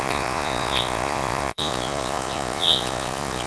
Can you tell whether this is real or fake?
fake